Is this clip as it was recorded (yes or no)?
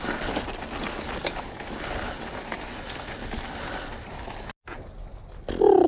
yes